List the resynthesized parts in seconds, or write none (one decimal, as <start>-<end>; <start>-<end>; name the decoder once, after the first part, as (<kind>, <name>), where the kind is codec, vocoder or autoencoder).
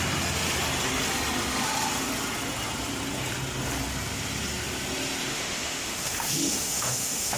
5.3-7.4 (autoencoder, DAC-VAE)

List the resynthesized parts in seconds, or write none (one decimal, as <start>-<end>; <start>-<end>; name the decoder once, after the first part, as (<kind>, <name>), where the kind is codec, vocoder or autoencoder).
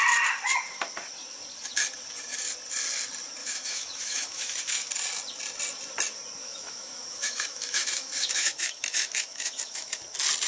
3.4-4.9 (autoencoder, DAC-VAE); 6.4-10.0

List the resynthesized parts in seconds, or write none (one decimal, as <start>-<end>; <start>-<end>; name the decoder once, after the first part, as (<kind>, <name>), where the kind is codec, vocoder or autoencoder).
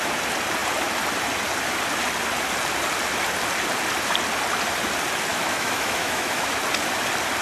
5.3-6.6 (autoencoder, DAC-VAE)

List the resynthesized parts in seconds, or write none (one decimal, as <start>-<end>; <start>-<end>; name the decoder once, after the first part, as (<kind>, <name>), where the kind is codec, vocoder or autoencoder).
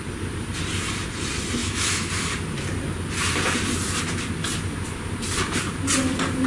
1.6-2.1 (autoencoder, DAC-VAE)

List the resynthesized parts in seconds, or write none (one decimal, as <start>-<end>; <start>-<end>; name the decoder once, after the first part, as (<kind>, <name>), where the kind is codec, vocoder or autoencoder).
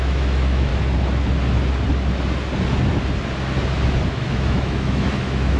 0.0-0.7 (autoencoder, DAC-VAE); 4.1-5.6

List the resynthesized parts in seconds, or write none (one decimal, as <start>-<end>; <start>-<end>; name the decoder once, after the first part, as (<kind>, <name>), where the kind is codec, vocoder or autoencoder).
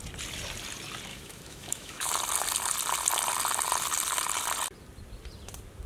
1.1-2.1 (autoencoder, DAC-VAE)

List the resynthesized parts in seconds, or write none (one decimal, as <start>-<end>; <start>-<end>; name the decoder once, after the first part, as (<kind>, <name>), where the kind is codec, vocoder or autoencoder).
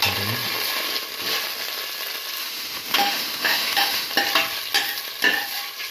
2.4-4.1 (autoencoder, DAC-VAE)